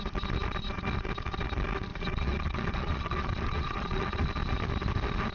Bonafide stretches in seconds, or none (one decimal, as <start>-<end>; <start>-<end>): 0.0-1.9; 4.3-5.3